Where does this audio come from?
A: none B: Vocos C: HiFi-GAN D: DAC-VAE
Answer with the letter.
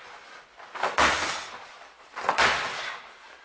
A